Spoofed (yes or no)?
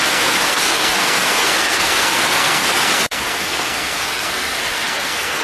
yes